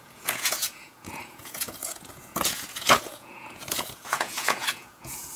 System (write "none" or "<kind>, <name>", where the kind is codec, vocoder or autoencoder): vocoder, Vocos